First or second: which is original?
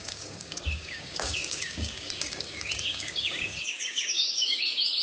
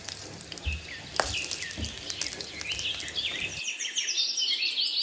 second